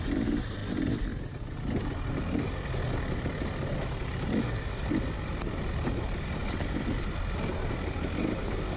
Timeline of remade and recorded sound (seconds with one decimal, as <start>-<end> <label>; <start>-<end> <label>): 0.0-8.8 recorded